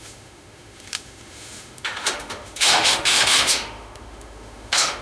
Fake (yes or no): yes